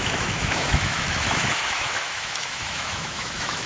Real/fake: fake